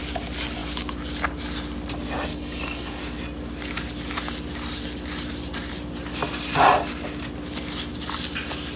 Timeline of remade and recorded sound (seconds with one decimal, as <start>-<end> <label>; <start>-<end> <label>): 0.0-2.3 recorded; 2.3-3.0 remade; 3.0-8.8 recorded